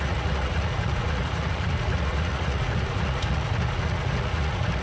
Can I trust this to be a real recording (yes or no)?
no